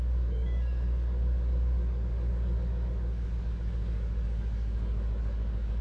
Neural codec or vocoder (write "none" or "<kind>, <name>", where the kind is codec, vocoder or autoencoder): codec, DAC